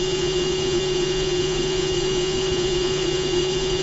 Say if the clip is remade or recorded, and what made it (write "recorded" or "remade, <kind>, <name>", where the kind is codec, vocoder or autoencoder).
remade, vocoder, Vocos